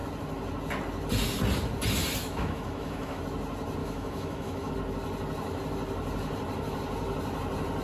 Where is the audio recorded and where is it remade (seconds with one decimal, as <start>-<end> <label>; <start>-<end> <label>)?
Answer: 0.0-2.2 recorded; 2.2-3.2 remade; 3.2-3.8 recorded; 3.8-4.7 remade; 4.7-7.8 recorded

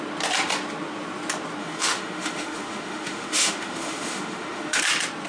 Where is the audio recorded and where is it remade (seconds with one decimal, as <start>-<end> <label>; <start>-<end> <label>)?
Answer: 0.0-1.6 recorded; 1.6-4.8 remade; 4.8-5.3 recorded